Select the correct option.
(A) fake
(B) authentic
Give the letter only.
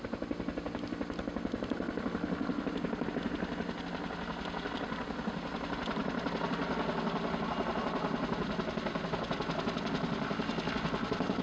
B